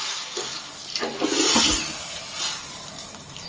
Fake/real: real